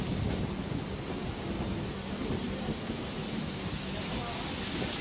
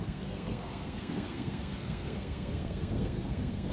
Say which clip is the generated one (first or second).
second